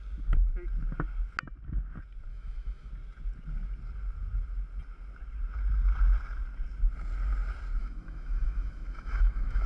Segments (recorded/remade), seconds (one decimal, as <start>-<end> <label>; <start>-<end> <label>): 0.0-2.3 recorded; 2.3-2.9 remade; 2.9-7.8 recorded; 7.8-9.7 remade